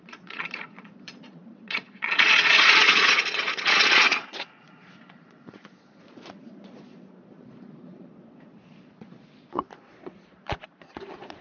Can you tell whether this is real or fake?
fake